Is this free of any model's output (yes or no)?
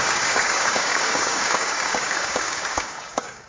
no